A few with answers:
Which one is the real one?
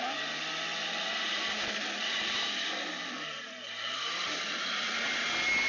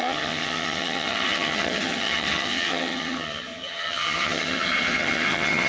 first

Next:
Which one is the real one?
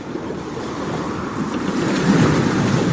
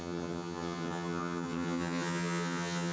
first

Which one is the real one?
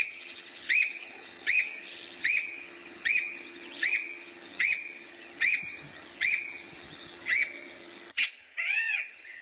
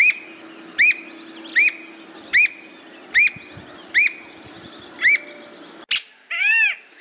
second